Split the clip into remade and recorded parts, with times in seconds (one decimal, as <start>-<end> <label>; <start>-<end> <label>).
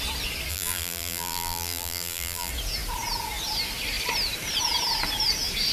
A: 0.0-0.5 recorded; 0.5-2.5 remade; 2.5-5.7 recorded